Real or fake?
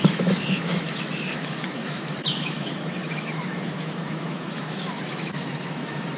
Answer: fake